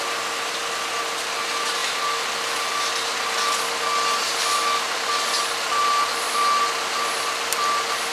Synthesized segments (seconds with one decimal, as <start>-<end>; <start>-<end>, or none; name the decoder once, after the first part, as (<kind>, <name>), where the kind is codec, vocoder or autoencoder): none